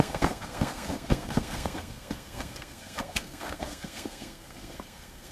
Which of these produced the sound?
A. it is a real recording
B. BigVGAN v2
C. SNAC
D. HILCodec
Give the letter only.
C